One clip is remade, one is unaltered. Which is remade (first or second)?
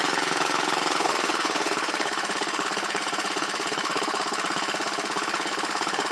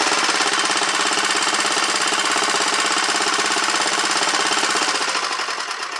first